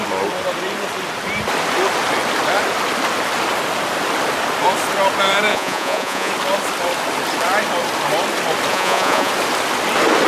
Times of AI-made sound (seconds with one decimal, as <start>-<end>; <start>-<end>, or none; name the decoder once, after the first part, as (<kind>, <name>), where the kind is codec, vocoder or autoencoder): 5.5-6.3 (vocoder, Vocos); 8.7-9.3